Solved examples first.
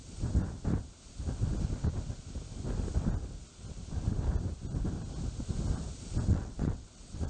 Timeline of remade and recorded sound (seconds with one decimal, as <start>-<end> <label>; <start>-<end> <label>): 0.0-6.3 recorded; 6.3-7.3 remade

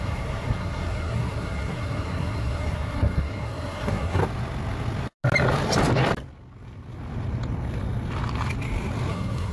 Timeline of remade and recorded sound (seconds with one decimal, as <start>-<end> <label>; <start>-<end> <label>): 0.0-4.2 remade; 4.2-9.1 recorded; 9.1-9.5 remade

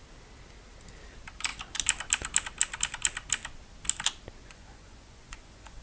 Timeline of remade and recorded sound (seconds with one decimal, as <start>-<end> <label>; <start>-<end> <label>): 0.0-4.4 recorded; 4.4-5.8 remade

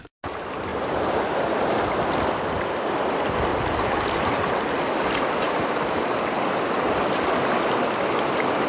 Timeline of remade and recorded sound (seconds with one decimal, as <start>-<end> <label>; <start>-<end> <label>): 0.0-0.7 recorded; 0.7-3.1 remade; 3.1-3.5 recorded; 3.5-7.5 remade; 7.5-8.7 recorded